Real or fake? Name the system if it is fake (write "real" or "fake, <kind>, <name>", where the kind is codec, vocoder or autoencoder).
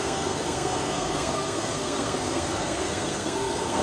fake, codec, SNAC